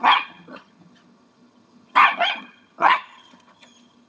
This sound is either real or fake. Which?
fake